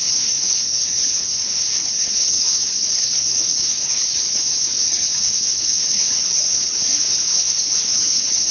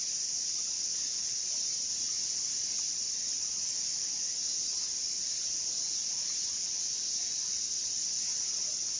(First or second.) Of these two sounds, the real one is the second